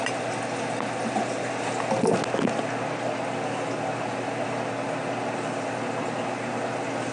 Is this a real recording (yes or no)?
yes